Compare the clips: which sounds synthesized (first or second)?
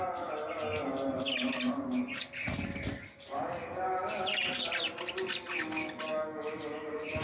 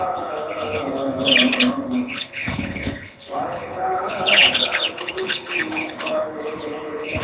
second